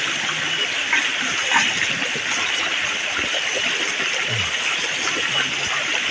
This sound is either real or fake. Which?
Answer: real